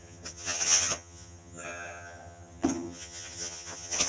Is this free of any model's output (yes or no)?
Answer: no